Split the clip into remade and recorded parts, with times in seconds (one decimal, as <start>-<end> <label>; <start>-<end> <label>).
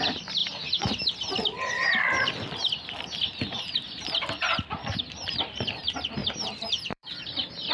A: 0.0-0.4 remade; 0.4-5.0 recorded; 5.0-7.7 remade